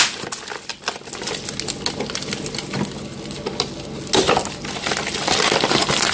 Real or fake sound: real